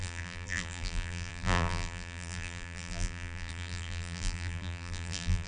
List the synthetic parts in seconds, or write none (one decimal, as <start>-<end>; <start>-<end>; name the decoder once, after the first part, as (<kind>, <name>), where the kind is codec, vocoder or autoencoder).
0.0-5.5 (vocoder, BigVGAN v2)